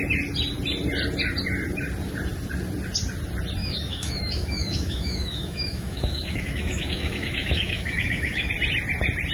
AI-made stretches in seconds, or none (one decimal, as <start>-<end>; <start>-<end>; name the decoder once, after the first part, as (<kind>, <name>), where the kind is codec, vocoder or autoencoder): 3.6-8.5 (autoencoder, DAC-VAE)